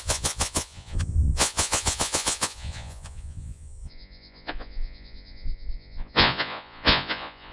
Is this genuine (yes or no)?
no